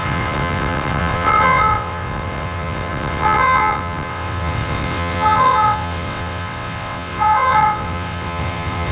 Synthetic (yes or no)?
yes